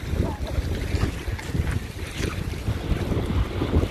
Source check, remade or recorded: recorded